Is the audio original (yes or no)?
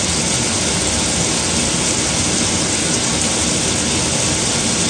yes